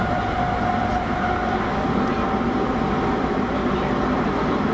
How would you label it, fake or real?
real